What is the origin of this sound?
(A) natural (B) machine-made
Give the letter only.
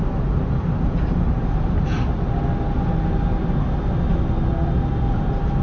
A